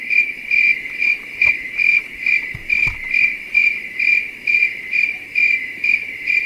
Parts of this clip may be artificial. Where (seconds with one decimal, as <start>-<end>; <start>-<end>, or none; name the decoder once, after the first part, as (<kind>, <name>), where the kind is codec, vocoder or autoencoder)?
0.0-0.7 (vocoder, BigVGAN v2); 1.5-2.6; 3.1-6.5